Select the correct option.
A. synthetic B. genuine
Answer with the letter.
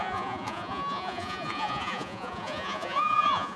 A